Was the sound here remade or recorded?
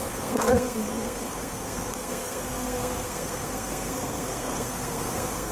remade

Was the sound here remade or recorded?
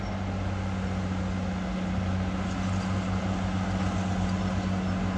recorded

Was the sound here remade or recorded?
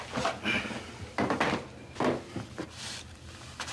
recorded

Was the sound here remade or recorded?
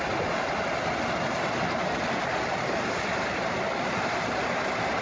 recorded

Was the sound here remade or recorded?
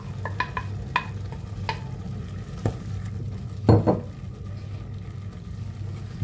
recorded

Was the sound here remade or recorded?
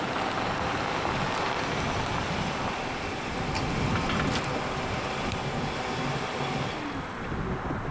recorded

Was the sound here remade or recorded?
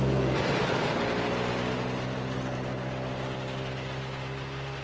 recorded